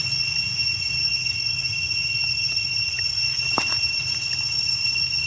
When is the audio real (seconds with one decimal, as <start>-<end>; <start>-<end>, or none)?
0.0-5.3